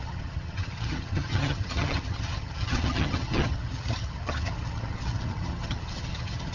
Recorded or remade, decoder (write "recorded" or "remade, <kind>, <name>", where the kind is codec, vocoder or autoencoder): remade, vocoder, HiFi-GAN